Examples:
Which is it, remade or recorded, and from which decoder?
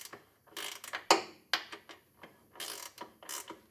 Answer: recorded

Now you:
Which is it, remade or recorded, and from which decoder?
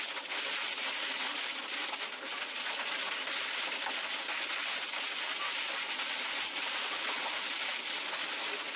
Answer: recorded